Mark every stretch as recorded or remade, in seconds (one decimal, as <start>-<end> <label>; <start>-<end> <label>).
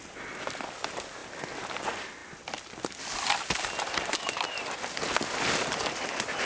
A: 0.0-6.4 recorded